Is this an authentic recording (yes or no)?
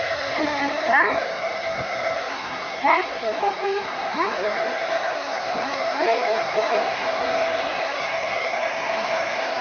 no